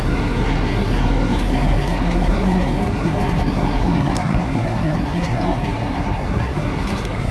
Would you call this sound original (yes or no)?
no